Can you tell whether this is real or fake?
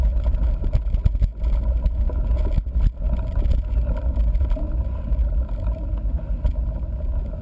real